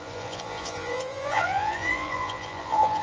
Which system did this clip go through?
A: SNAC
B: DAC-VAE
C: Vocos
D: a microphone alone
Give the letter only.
C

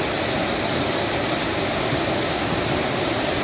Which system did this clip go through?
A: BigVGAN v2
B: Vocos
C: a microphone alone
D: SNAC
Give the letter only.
C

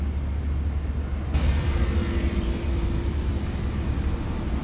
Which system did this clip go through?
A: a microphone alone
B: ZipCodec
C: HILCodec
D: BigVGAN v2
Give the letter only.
A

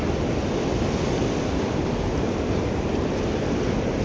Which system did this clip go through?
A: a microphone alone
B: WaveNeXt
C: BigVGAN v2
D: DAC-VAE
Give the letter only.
A